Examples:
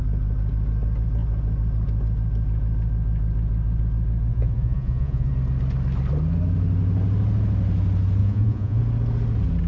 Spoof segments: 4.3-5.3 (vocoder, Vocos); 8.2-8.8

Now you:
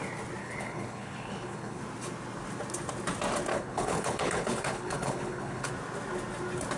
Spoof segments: 0.4-1.8 (codec, HILCodec); 3.5-5.7

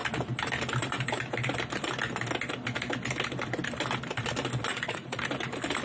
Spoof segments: 4.7-5.2 (vocoder, Vocos)

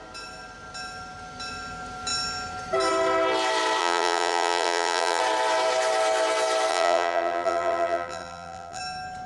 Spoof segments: 3.8-5.2 (vocoder, BigVGAN v2); 6.7-8.8